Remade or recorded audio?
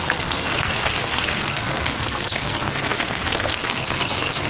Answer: remade